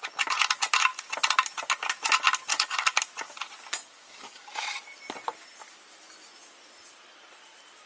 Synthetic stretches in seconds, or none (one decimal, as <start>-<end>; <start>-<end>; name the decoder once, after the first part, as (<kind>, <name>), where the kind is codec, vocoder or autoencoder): 2.5-3.0 (codec, DAC); 3.8-4.5